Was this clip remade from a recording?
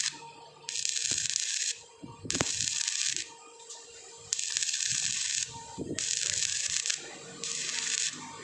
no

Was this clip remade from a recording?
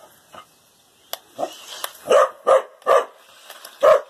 no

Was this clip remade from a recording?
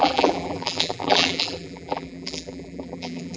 yes